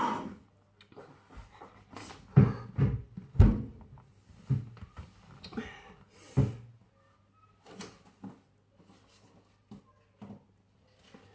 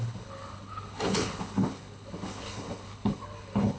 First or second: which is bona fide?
first